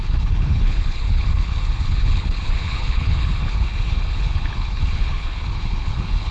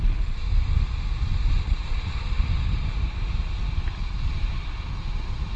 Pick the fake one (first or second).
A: first